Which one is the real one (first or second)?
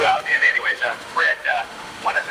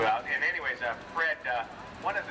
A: second